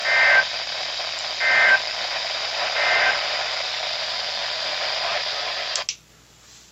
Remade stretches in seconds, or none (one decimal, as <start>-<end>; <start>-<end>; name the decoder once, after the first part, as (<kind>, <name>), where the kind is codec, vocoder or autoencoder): 0.0-4.0 (vocoder, BigVGAN v2); 4.4-5.1